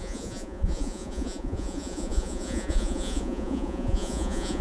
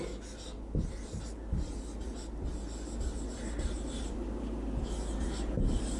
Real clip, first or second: second